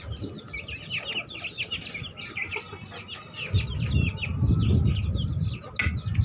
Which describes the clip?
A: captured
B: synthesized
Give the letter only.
A